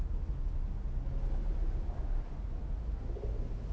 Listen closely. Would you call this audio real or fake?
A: real